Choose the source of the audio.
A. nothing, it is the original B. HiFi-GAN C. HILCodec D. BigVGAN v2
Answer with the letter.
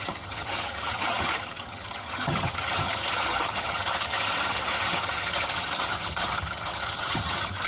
B